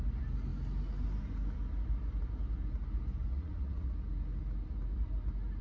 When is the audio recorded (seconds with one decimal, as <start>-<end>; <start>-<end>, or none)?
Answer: 0.0-3.3; 3.9-5.6